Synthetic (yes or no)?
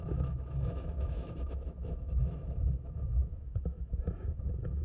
yes